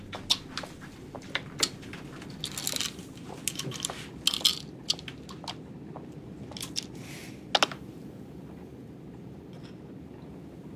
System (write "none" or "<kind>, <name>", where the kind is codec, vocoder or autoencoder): none